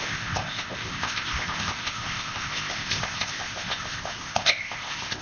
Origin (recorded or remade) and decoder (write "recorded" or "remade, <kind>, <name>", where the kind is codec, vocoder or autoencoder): remade, codec, ZipCodec